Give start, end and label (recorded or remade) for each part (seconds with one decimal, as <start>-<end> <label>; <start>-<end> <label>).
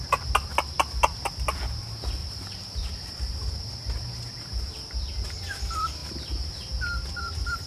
0.0-2.2 recorded; 2.2-4.7 remade; 4.7-7.7 recorded